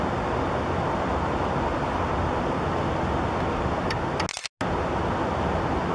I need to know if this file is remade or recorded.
recorded